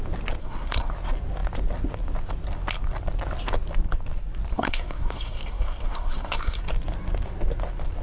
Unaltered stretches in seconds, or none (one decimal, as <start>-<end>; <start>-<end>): 0.0-0.4; 0.9-4.5; 6.6-8.0